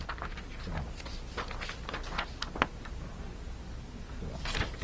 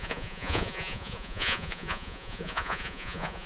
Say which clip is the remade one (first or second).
second